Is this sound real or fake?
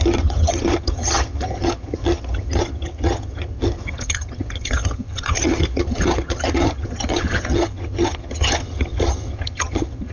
fake